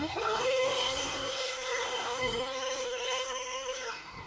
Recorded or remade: remade